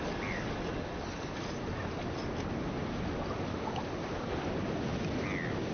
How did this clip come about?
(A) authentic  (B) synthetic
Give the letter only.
A